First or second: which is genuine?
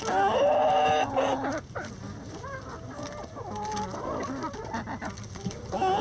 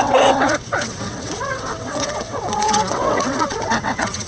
first